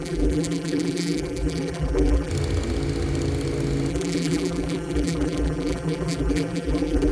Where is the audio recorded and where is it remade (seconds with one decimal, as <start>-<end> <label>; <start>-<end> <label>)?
0.0-2.3 remade; 2.3-3.9 recorded; 3.9-7.1 remade